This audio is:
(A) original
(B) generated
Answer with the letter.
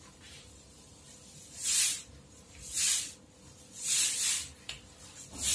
A